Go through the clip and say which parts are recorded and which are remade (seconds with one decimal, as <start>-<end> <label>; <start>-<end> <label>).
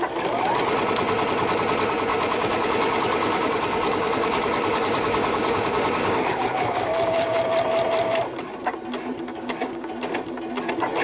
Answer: 0.0-2.1 recorded; 2.1-7.4 remade; 7.4-9.3 recorded; 9.3-9.9 remade; 9.9-11.0 recorded